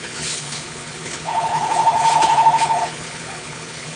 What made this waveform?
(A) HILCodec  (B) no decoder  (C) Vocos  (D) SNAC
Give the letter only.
A